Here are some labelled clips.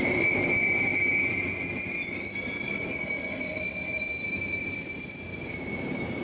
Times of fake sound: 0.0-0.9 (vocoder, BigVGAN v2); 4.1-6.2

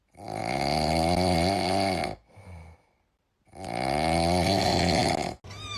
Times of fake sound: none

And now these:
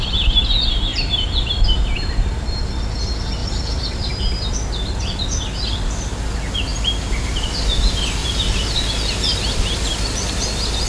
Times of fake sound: 0.9-2.2 (vocoder, BigVGAN v2); 3.4-4.2; 6.7-7.4; 8.2-8.8

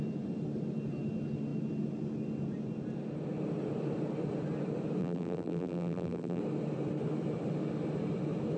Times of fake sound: 5.0-6.4 (vocoder, BigVGAN v2)

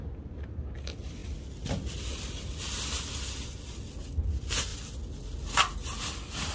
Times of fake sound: none